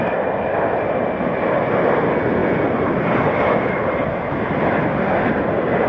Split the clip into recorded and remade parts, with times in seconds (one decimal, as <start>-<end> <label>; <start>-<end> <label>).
0.0-5.9 recorded